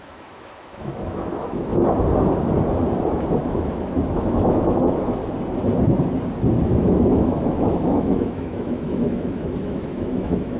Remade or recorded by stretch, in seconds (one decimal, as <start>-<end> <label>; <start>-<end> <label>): 0.0-1.7 remade; 1.7-3.4 recorded; 3.4-5.2 remade; 5.2-6.7 recorded; 6.7-10.6 remade